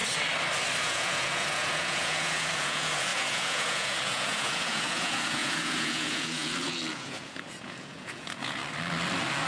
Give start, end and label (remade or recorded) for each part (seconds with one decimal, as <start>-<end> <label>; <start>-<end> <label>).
0.0-0.8 recorded; 0.8-8.6 remade; 8.6-9.5 recorded